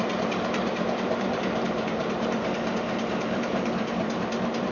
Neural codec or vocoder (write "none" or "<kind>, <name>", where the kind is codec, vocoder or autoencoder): vocoder, BigVGAN v2